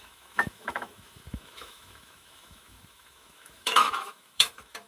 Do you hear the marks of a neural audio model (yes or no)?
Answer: yes